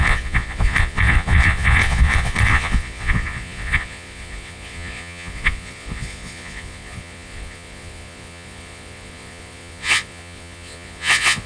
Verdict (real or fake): fake